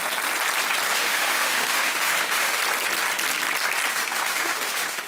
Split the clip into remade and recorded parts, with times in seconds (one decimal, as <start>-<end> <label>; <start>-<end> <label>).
0.0-0.9 recorded; 0.9-2.6 remade; 2.6-3.9 recorded; 3.9-5.1 remade